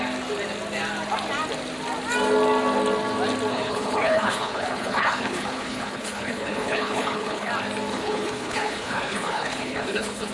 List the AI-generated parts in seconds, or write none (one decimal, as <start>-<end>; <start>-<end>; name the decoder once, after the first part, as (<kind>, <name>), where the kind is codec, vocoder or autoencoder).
3.5-7.5 (codec, HILCodec); 7.9-10.3